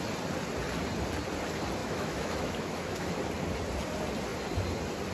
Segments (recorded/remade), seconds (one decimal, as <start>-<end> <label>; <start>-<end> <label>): 0.0-1.8 recorded; 1.8-3.1 remade; 3.1-5.1 recorded